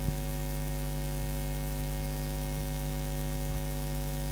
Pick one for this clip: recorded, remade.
remade